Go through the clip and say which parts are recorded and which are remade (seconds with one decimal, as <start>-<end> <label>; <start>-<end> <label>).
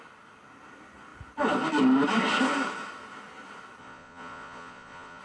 0.0-3.8 recorded; 3.8-5.2 remade